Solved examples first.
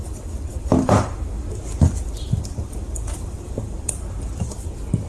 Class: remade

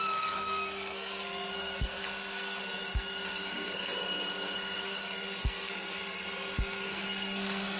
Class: remade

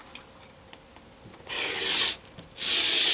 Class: recorded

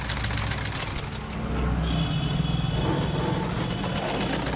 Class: recorded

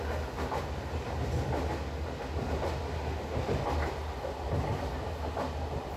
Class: recorded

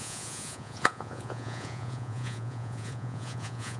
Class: remade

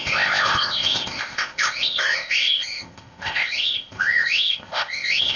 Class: remade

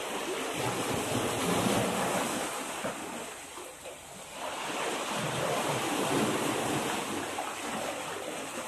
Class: recorded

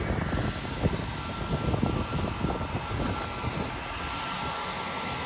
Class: recorded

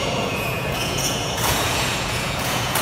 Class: remade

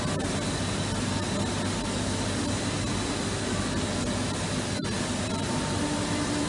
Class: recorded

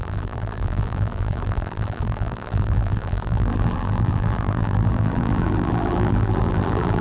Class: remade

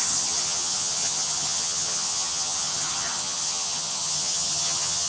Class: remade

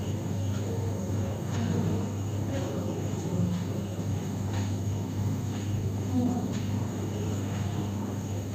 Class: remade